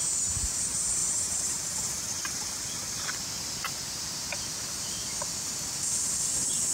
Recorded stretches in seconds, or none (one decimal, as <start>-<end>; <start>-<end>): 0.0-6.7